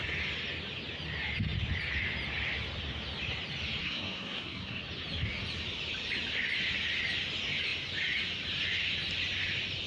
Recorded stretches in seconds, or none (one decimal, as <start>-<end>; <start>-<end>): 0.0-3.8; 4.8-9.9